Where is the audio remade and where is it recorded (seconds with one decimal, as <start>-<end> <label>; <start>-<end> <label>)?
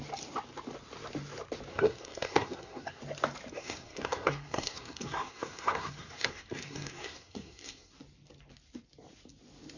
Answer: 0.0-1.7 recorded; 1.7-3.0 remade; 3.0-3.5 recorded; 3.5-7.9 remade; 7.9-9.8 recorded